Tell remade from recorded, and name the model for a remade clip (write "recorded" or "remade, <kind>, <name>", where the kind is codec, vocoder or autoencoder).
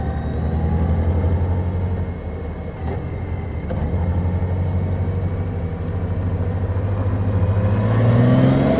recorded